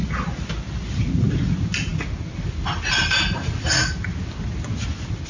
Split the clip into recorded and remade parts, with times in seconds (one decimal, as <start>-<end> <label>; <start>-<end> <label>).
0.0-5.3 recorded